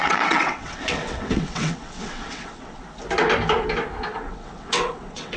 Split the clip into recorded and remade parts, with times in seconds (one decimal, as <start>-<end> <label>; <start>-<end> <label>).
0.0-2.8 remade; 2.8-4.1 recorded; 4.1-5.4 remade